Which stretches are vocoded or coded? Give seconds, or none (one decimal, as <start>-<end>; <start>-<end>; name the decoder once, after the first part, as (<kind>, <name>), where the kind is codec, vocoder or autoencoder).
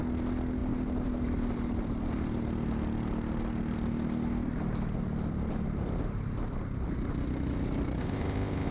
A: 8.0-8.7 (codec, ZipCodec)